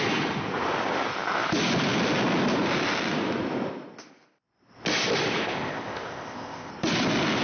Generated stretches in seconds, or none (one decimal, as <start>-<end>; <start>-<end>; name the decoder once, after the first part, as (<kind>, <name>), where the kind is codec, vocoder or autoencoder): 5.4-6.7 (codec, ZipCodec)